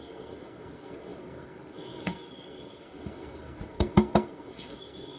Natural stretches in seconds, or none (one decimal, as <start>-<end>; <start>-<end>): none